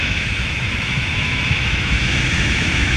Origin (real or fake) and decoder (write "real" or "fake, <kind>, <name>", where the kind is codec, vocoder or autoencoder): fake, autoencoder, DAC-VAE